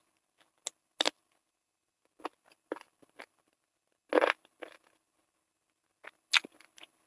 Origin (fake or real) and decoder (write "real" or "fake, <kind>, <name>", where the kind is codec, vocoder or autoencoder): real